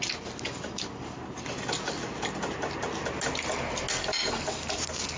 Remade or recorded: recorded